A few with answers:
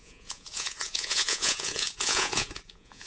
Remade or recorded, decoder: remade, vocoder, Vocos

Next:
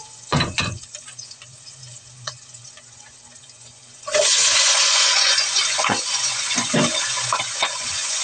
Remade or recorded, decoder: remade, vocoder, Vocos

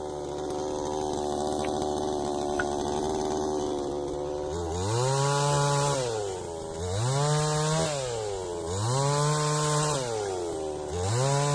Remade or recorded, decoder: recorded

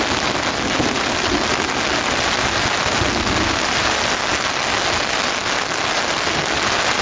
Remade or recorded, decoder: recorded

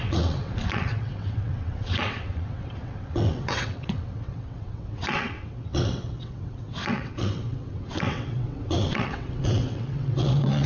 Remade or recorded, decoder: remade, vocoder, WaveNeXt